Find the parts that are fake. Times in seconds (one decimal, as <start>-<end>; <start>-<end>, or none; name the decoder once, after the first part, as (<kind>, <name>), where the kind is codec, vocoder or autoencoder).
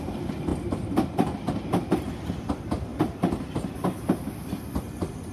0.5-1.9 (vocoder, BigVGAN v2)